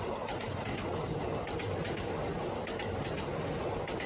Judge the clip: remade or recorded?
recorded